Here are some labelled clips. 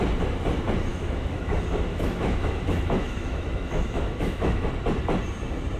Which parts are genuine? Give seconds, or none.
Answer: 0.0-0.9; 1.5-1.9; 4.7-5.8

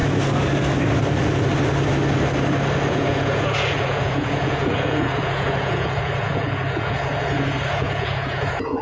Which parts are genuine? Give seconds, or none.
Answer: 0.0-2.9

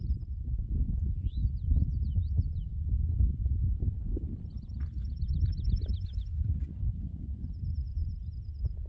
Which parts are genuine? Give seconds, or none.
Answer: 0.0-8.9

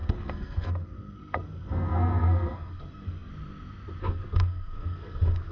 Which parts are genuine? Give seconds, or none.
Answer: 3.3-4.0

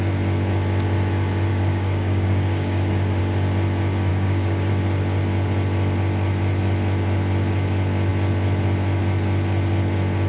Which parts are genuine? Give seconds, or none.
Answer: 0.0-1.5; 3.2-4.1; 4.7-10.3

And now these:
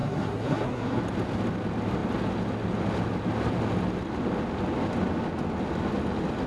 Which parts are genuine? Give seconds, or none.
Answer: 1.0-6.5

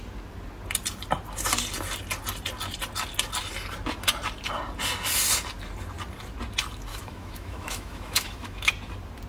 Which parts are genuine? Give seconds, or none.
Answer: 0.0-6.9; 8.7-9.3

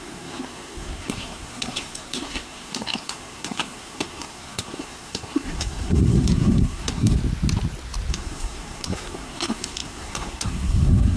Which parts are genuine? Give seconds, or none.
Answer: 7.2-8.1